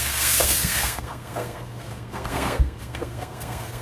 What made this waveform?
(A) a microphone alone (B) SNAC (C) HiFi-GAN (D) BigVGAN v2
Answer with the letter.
B